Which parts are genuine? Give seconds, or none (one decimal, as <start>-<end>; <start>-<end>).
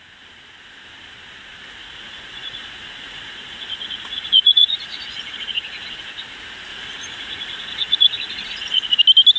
0.0-1.8; 6.0-6.7; 9.0-9.4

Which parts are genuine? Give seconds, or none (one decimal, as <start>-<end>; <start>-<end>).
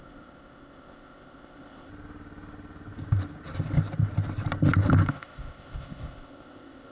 1.9-5.1